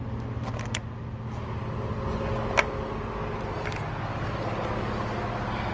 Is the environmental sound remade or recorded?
recorded